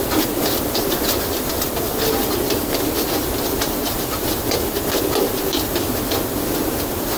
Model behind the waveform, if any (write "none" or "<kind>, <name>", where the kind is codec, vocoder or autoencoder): none